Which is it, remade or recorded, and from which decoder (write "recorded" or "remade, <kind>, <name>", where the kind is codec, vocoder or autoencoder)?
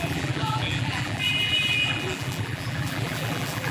remade, vocoder, BigVGAN v2